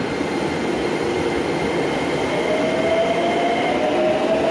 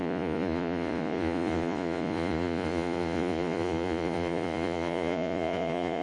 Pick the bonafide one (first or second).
first